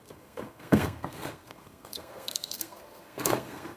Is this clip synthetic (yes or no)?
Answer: yes